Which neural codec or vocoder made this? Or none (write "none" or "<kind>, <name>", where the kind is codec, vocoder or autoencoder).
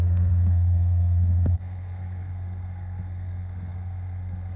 codec, SNAC